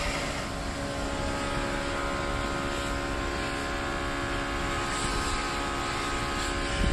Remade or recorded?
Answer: recorded